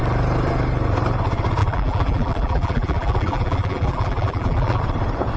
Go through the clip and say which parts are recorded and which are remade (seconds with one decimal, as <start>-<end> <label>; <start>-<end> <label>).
0.0-1.6 recorded; 1.6-4.8 remade; 4.8-5.4 recorded